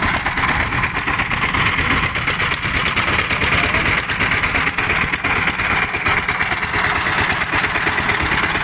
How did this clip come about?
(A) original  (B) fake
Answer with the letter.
A